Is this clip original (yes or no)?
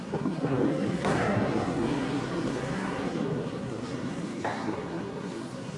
no